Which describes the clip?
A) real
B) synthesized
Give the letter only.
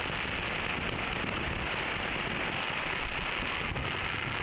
A